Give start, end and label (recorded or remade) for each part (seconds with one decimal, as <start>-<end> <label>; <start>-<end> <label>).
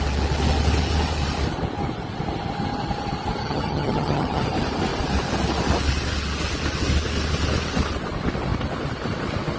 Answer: 0.0-3.4 recorded; 3.4-4.4 remade; 4.4-9.6 recorded